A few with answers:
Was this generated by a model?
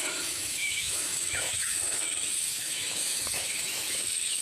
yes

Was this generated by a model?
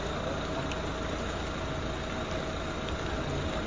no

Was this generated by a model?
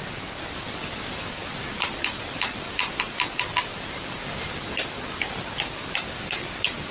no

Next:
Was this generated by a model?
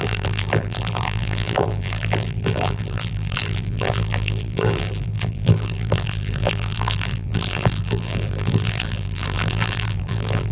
yes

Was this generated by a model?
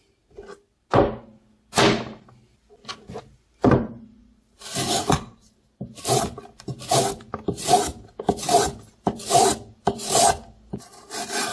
no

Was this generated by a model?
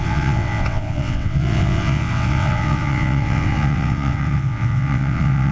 yes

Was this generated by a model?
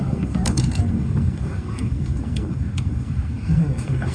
yes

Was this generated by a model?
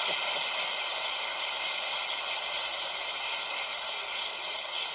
no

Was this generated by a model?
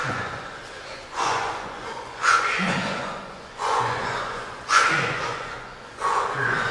yes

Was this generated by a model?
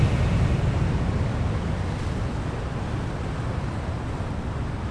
no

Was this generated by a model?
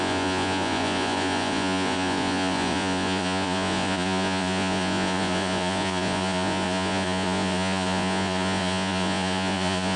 yes